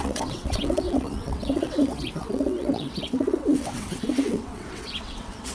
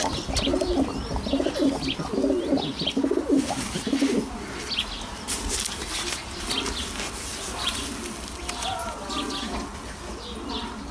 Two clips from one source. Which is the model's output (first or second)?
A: first